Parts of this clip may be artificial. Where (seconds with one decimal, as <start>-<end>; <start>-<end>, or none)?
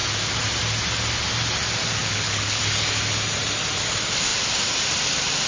2.0-2.6